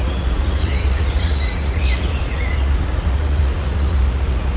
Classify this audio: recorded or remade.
remade